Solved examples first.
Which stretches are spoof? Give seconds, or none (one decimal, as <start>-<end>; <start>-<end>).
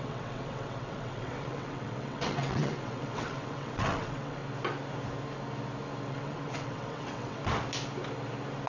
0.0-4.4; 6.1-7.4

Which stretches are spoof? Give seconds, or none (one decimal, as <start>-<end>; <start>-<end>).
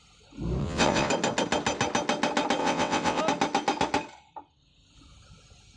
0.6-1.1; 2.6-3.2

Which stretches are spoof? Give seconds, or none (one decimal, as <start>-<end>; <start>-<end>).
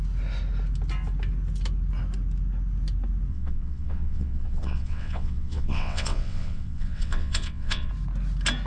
3.3-7.9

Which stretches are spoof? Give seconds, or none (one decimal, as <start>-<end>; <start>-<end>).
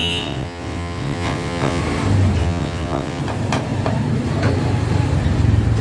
0.0-1.8; 2.4-3.2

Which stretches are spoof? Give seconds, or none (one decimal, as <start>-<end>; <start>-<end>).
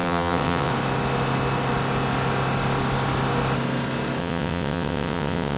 0.0-0.7; 4.2-5.6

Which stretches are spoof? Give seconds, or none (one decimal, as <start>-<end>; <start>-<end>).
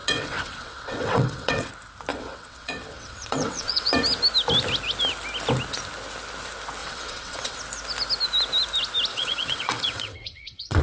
0.0-1.7; 2.1-3.9; 6.8-7.6; 9.1-10.8